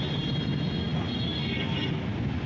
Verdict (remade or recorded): recorded